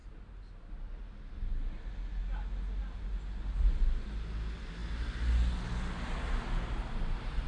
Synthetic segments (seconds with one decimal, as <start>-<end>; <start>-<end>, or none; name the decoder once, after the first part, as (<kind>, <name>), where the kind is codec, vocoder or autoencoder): none